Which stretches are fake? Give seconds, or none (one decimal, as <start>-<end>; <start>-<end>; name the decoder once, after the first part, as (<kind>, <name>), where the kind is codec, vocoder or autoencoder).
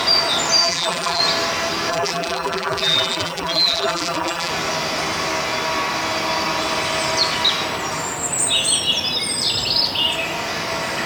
0.6-1.2 (vocoder, BigVGAN v2); 1.9-4.5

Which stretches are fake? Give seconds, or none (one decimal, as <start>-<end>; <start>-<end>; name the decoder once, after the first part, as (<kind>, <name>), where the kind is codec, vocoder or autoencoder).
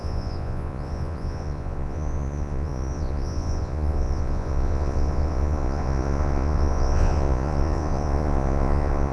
0.0-9.1 (vocoder, Vocos)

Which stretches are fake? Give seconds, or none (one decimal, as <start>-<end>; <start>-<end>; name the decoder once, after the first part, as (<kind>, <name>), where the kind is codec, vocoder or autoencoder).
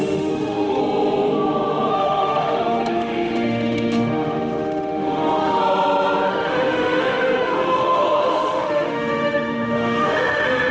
0.0-0.8 (autoencoder, DAC-VAE); 1.9-5.6; 6.3-10.7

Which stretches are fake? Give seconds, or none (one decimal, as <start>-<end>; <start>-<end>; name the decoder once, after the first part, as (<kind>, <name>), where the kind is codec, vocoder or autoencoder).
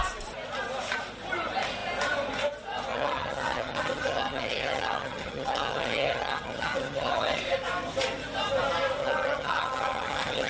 2.9-7.4 (vocoder, HiFi-GAN); 9.0-10.5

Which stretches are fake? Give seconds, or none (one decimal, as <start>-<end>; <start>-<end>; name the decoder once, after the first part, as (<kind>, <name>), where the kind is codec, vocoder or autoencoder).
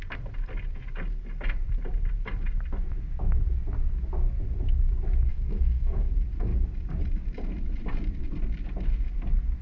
5.3-6.1 (codec, SNAC)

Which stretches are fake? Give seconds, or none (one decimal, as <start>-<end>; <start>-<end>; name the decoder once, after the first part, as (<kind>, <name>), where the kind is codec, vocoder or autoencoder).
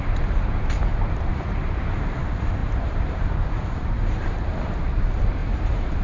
0.0-6.0 (vocoder, BigVGAN v2)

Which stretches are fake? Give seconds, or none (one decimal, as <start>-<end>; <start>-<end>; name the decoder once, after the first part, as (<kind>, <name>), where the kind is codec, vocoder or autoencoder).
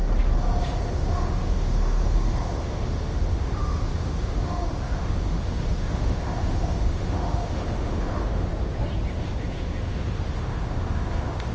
0.9-8.5 (autoencoder, DAC-VAE); 9.1-11.5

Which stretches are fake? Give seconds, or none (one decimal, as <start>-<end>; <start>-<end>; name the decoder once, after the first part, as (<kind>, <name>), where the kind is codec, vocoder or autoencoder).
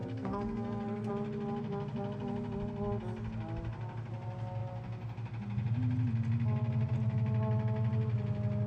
0.0-1.1 (codec, SNAC)